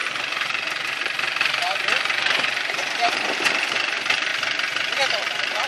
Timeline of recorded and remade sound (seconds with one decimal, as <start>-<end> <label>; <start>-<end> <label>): 0.0-4.3 remade; 4.3-5.0 recorded; 5.0-5.7 remade